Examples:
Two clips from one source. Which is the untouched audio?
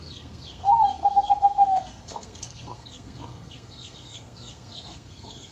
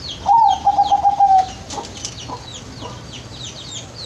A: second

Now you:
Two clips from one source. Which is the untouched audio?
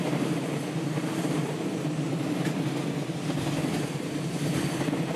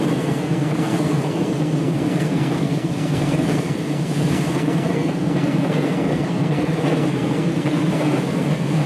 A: first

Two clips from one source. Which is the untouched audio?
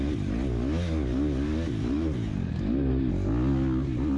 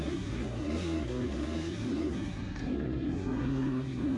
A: first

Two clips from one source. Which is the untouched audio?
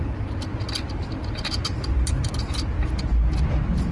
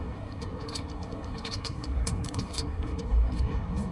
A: first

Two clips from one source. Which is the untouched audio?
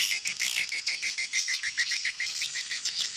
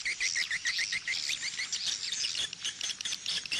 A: second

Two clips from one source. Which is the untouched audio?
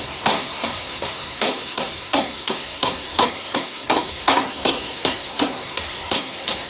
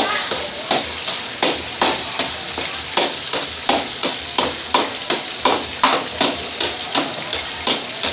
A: second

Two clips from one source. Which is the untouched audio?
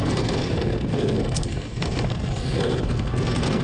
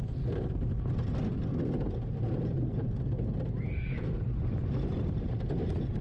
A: second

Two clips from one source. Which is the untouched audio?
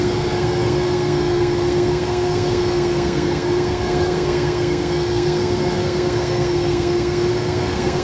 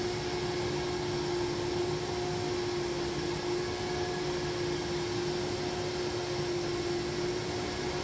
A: second